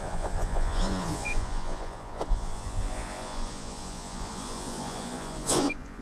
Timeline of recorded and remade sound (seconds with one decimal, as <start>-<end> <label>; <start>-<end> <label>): 0.0-6.0 remade